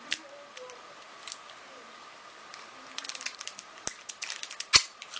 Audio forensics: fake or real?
real